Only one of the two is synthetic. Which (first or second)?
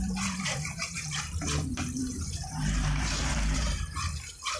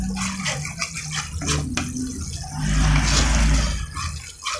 first